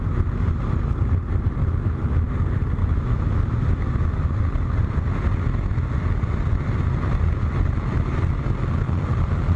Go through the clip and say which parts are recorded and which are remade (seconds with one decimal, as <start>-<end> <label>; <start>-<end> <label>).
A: 0.0-2.8 recorded; 2.8-3.4 remade; 3.4-9.6 recorded